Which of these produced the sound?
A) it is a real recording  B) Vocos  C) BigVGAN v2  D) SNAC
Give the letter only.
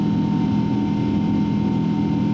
A